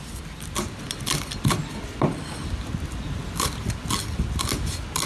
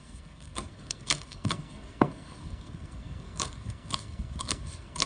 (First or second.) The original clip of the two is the first